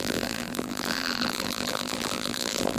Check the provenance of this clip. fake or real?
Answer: fake